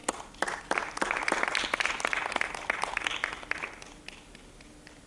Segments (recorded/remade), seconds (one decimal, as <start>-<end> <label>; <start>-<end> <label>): 0.0-5.1 recorded